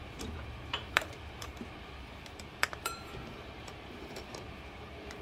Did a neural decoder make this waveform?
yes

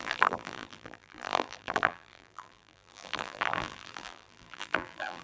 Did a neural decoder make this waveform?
yes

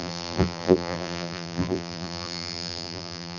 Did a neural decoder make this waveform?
yes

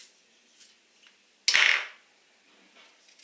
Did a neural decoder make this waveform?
no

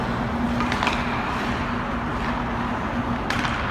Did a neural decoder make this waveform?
no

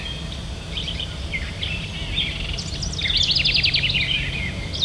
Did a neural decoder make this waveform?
no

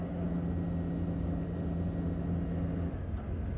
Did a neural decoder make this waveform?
no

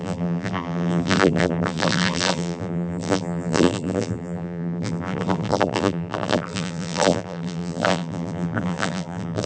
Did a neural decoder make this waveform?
yes